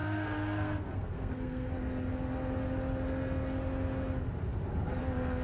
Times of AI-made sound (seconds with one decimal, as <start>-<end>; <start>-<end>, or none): 0.0-1.7